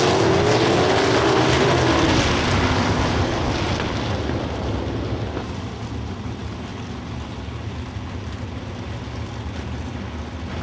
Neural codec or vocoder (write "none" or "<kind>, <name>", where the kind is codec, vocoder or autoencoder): none